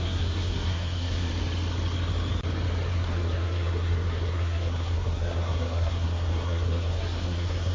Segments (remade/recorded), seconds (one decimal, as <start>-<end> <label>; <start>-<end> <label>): 0.0-1.3 remade; 1.3-2.9 recorded; 2.9-7.7 remade